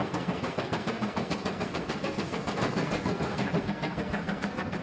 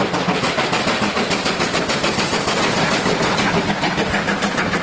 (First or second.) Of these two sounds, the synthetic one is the first